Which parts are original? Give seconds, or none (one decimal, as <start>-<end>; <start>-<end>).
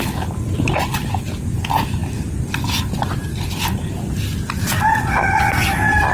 0.0-6.1